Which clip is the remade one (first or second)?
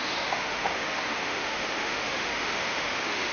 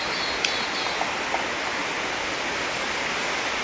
first